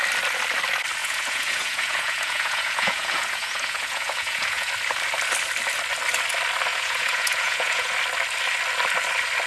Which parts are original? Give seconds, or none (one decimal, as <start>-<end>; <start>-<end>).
0.0-1.0; 4.7-6.7; 7.9-9.5